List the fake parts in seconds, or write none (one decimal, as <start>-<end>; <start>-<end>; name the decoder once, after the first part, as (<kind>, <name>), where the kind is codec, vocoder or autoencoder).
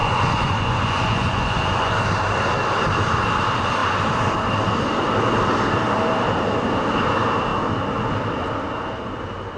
0.0-1.9 (vocoder, Vocos)